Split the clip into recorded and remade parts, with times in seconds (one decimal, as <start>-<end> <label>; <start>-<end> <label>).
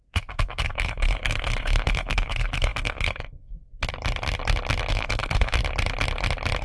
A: 0.0-3.7 remade; 3.7-4.9 recorded; 4.9-5.6 remade; 5.6-6.6 recorded